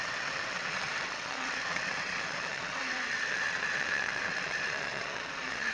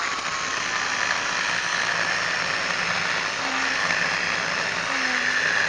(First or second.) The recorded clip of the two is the second